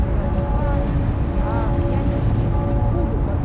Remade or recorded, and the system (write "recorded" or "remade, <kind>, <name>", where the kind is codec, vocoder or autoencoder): recorded